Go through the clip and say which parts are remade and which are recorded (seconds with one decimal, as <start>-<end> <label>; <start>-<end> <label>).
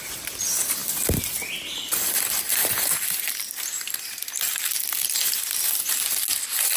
0.0-0.8 remade; 0.8-2.1 recorded; 2.1-2.6 remade; 2.6-6.8 recorded